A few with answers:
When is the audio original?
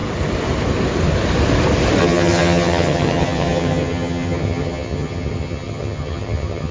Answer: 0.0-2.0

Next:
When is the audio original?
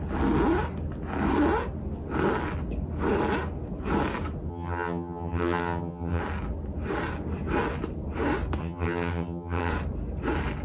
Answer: 0.0-4.5; 6.2-8.6; 9.7-10.6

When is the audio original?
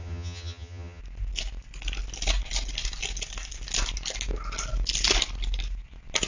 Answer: 1.0-6.3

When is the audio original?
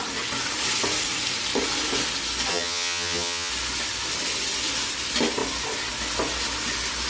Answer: 0.0-2.5; 3.5-7.1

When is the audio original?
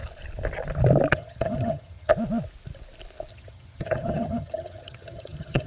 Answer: 0.0-1.1; 2.1-3.3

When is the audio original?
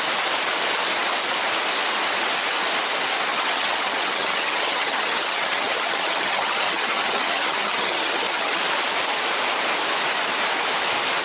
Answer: 0.0-3.3; 8.6-11.2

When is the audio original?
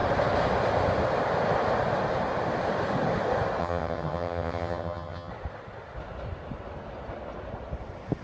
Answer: 0.0-3.6; 5.3-8.2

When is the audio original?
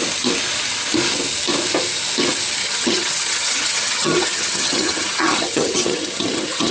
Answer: 0.0-2.6